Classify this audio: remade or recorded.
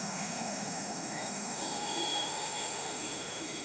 remade